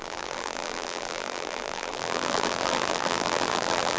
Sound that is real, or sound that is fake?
fake